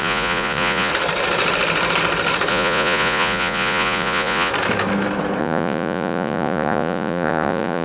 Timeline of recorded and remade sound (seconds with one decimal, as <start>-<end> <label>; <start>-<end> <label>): 0.0-0.9 remade; 0.9-2.5 recorded; 2.5-4.5 remade; 4.5-5.4 recorded; 5.4-7.8 remade